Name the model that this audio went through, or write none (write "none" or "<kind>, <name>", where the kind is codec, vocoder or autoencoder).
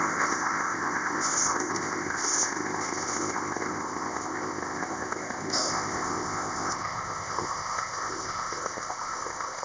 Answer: codec, ZipCodec